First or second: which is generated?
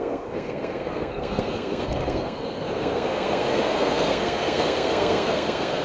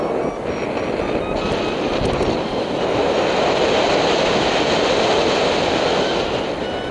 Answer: first